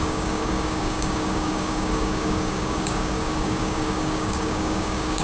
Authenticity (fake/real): fake